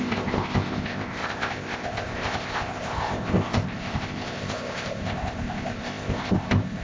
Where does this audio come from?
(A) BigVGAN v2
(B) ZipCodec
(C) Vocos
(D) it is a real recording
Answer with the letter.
B